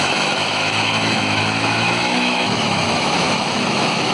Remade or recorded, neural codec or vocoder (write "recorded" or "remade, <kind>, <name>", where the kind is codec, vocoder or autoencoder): remade, autoencoder, DAC-VAE